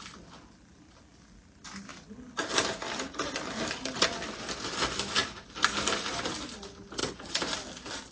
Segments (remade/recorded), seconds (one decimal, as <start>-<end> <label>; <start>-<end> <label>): 0.0-8.1 recorded